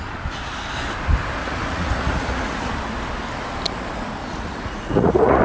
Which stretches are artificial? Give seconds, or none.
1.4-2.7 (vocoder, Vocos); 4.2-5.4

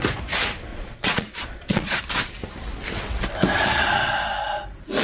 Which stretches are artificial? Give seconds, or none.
0.7-2.0 (vocoder, Vocos)

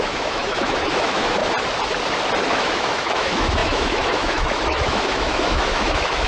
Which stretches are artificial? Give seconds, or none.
0.0-1.4 (autoencoder, DAC-VAE); 2.5-6.3

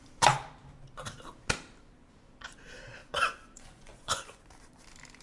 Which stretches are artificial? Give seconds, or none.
3.0-4.4 (vocoder, Vocos)

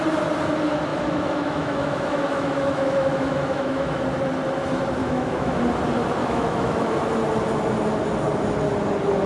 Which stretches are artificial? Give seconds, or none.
0.9-4.0 (autoencoder, DAC-VAE); 5.0-5.6; 6.2-6.9